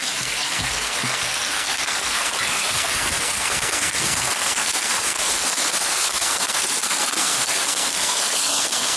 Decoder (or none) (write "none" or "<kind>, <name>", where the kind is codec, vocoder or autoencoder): codec, SNAC